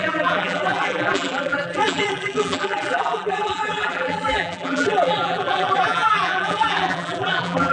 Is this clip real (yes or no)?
no